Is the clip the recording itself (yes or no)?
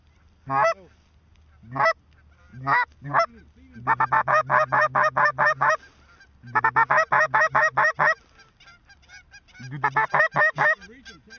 yes